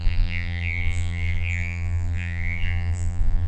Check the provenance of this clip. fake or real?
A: fake